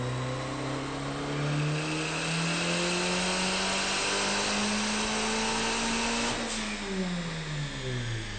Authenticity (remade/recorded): recorded